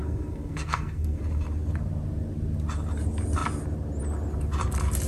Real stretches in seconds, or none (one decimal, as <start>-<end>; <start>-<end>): 1.2-5.1